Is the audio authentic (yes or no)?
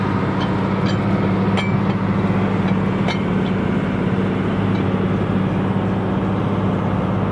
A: yes